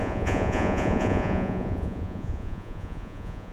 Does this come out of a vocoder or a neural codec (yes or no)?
yes